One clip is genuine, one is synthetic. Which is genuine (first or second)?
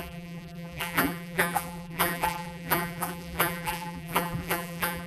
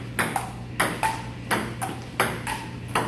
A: second